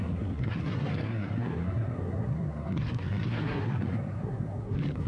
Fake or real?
fake